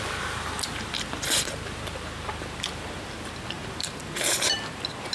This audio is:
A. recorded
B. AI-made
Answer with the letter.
B